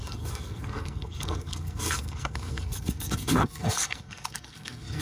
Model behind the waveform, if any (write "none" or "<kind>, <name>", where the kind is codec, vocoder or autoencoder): codec, SNAC